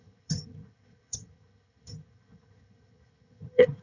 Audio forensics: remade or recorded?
remade